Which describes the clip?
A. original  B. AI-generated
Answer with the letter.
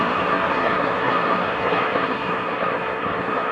B